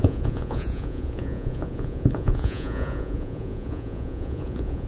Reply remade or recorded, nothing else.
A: remade